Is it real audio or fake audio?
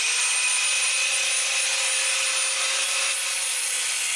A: real